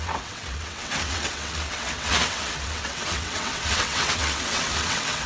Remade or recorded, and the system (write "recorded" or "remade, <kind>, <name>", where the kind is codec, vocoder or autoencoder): remade, vocoder, WaveNeXt